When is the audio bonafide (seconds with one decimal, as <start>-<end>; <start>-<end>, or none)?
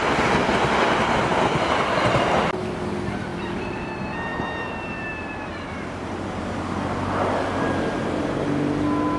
0.0-1.3; 2.4-3.3; 3.9-4.3; 6.9-9.2